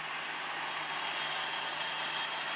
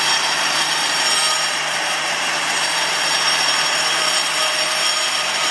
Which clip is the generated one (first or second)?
second